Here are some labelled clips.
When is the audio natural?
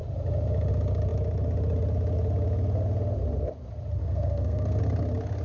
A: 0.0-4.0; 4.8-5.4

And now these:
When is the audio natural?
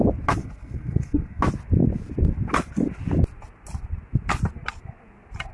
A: 0.0-0.4; 1.4-5.5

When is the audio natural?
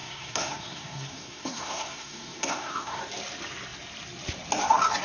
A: 3.0-5.0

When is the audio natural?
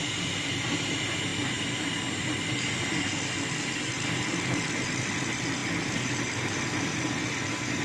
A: 0.0-7.8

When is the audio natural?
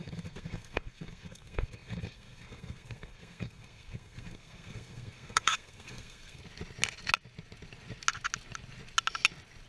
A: 6.4-9.7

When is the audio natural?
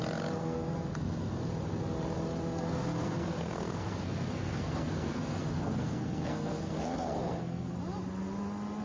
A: 0.0-0.4; 1.4-2.5; 7.7-8.8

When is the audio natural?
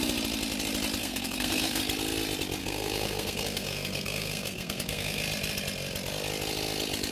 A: 0.0-1.0; 1.8-2.6; 5.2-7.1